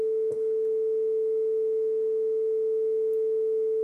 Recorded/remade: recorded